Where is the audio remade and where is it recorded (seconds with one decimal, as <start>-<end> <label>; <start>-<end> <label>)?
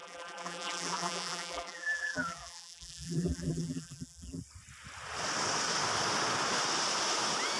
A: 0.0-4.4 remade; 4.4-7.6 recorded